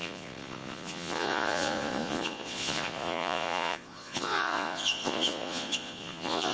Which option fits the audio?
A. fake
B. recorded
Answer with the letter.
A